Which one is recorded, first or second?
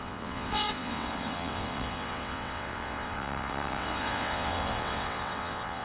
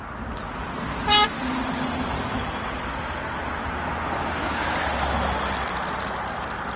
second